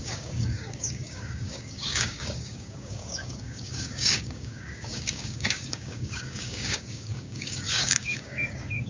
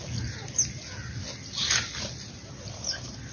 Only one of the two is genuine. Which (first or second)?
second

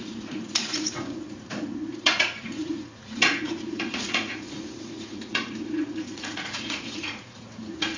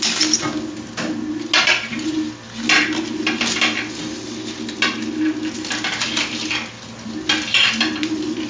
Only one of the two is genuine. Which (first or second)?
second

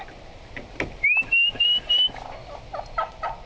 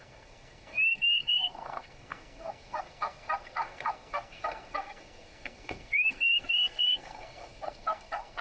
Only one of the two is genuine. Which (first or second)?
first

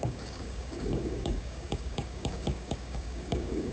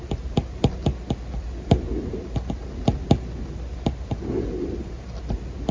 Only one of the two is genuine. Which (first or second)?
second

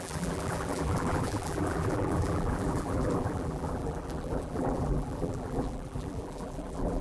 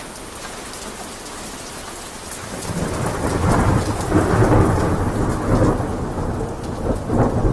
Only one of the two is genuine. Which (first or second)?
second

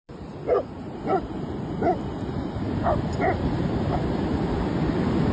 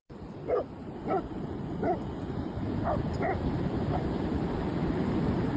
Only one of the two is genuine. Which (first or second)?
first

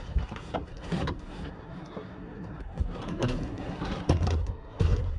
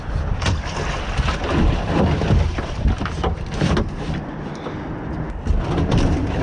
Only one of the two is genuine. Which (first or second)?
second